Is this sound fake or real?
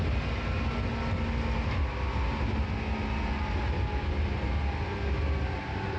real